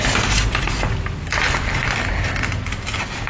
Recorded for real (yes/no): yes